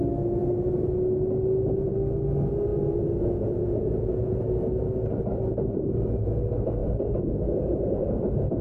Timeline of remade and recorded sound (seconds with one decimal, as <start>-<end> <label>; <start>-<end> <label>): 0.0-2.7 recorded; 2.7-4.4 remade; 4.4-8.6 recorded